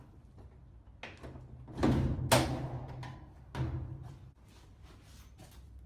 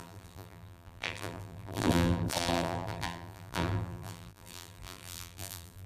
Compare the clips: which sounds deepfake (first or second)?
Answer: second